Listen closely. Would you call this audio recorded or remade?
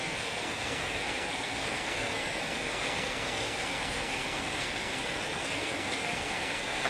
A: remade